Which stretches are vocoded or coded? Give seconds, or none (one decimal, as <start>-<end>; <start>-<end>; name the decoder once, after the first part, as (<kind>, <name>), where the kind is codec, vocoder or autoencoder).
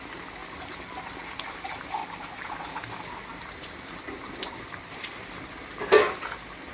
0.4-1.0 (vocoder, BigVGAN v2); 2.0-2.8; 3.3-6.7